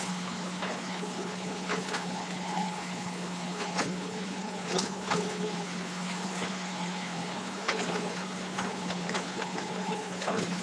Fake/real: fake